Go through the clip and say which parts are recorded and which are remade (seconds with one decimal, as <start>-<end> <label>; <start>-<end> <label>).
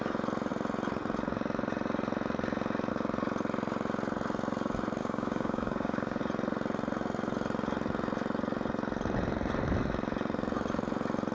0.0-5.0 recorded; 5.0-6.2 remade; 6.2-11.3 recorded